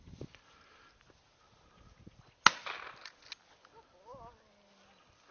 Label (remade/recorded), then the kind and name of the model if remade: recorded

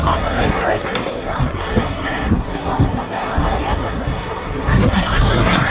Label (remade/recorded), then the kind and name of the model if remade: remade, codec, SNAC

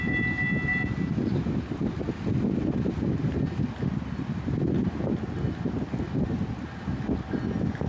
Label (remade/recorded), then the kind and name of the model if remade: recorded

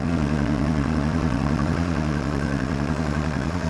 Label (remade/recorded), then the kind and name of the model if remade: remade, vocoder, Vocos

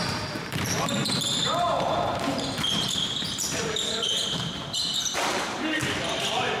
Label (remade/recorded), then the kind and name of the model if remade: remade, vocoder, BigVGAN v2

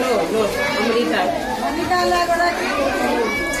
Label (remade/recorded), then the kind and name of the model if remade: recorded